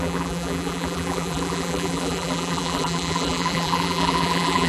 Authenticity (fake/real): fake